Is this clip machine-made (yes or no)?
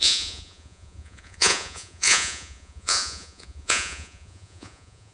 yes